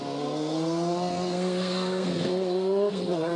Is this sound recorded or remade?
remade